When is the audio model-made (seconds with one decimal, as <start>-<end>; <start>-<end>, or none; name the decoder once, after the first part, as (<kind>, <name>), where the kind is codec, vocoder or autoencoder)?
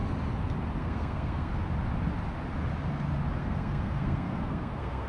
0.8-1.5 (codec, SNAC); 3.4-5.1